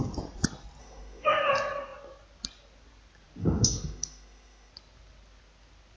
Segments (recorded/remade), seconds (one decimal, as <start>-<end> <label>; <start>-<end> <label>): 0.0-0.8 recorded; 0.8-1.5 remade; 1.5-3.4 recorded; 3.4-4.7 remade; 4.7-6.0 recorded